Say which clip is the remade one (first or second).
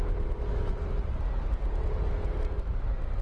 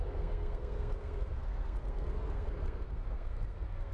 second